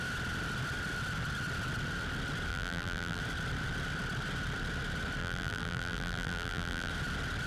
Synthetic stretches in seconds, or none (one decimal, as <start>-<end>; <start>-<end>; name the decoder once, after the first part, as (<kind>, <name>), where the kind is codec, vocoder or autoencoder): 2.5-3.2 (vocoder, BigVGAN v2); 5.2-6.9